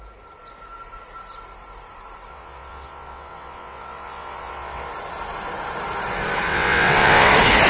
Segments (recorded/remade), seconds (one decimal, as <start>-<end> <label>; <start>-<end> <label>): 0.0-2.3 recorded; 2.3-4.9 remade; 4.9-6.5 recorded; 6.5-7.3 remade; 7.3-7.7 recorded